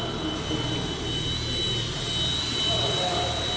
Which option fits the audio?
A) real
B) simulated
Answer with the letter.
A